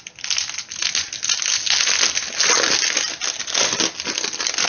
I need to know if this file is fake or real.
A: real